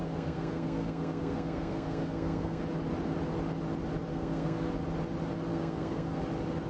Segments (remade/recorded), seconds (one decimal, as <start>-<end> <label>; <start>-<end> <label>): 0.0-2.6 remade; 2.6-4.1 recorded; 4.1-4.7 remade; 4.7-5.5 recorded; 5.5-6.2 remade; 6.2-6.7 recorded